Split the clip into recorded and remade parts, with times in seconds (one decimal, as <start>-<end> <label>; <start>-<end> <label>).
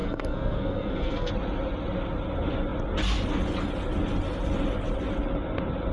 0.0-1.3 remade; 1.3-5.9 recorded